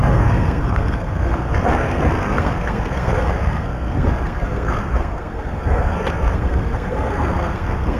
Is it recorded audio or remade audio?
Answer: remade